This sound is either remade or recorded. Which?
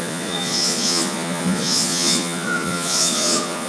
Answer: remade